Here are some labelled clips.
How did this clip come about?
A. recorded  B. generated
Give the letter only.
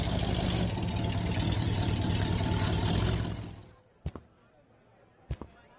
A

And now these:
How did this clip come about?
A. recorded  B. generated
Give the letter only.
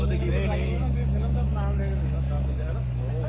B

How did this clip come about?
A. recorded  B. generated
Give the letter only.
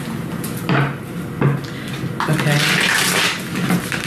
A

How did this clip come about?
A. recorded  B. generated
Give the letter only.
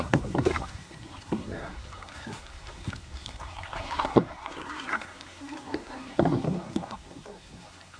B